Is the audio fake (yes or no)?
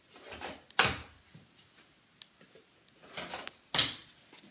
no